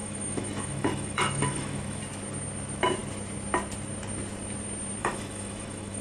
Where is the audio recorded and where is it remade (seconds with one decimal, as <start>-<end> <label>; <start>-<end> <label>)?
0.0-2.0 remade; 2.0-5.0 recorded; 5.0-6.0 remade